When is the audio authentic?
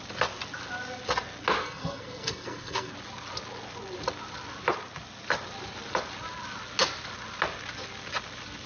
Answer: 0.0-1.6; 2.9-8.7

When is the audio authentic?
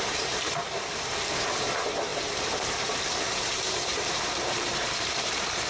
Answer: none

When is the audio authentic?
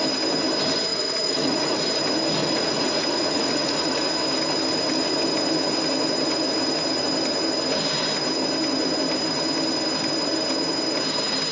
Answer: 0.0-0.9; 1.8-2.4; 4.0-11.5